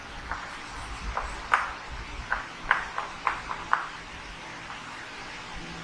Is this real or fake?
real